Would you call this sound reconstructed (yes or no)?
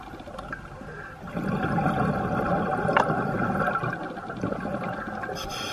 no